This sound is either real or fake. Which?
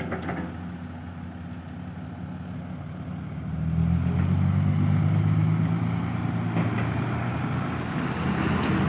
real